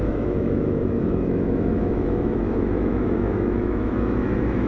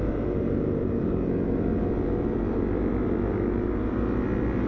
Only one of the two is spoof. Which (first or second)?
first